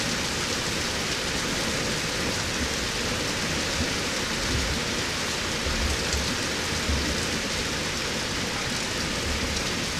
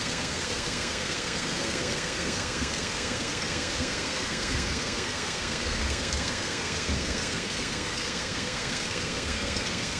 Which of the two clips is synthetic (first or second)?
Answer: second